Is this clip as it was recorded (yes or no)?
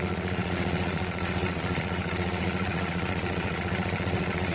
no